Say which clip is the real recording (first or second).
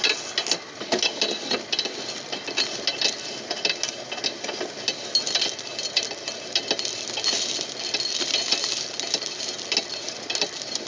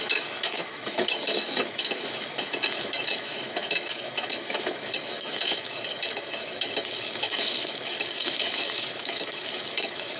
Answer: first